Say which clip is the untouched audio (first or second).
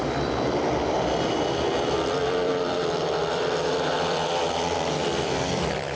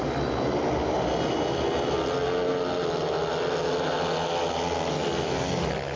second